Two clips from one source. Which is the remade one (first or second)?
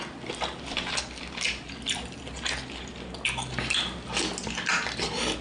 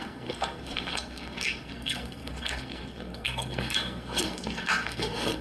second